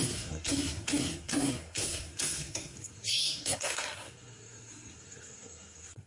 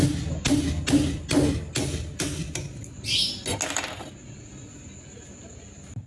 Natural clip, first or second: second